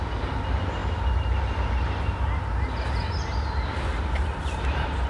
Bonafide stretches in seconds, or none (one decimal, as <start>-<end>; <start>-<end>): 0.0-5.1